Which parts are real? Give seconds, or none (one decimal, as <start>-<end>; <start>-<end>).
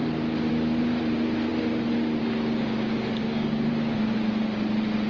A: 0.0-3.2; 3.7-5.1